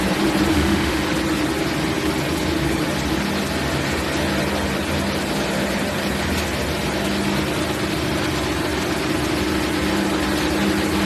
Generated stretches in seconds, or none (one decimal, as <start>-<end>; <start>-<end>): 0.5-1.0